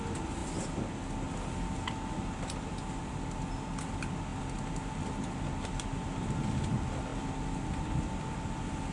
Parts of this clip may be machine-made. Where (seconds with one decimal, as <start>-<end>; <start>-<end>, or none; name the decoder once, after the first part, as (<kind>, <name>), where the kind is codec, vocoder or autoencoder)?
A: none